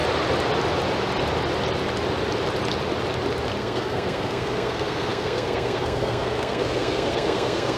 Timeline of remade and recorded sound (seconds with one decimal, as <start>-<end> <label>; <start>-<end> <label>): 0.0-3.6 recorded; 3.6-7.8 remade